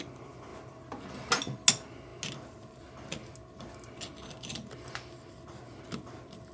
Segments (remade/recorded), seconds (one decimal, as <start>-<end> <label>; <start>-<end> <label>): 0.0-6.5 recorded